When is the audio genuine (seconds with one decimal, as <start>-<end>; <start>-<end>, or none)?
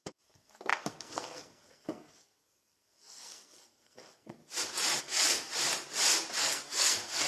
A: 4.4-5.0; 5.5-6.4